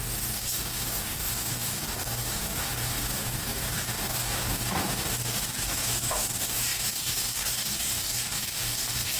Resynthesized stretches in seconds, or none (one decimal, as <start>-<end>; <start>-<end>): 0.0-9.2